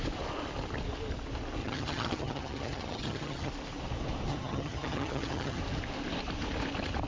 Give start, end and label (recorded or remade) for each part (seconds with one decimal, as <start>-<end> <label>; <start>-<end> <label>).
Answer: 0.0-1.6 recorded; 1.6-3.5 remade; 3.5-4.3 recorded; 4.3-5.6 remade; 5.6-7.1 recorded